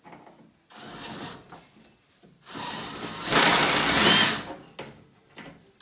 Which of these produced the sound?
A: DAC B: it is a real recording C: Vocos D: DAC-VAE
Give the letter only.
B